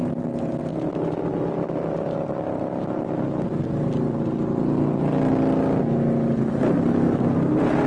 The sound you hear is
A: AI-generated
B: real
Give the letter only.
B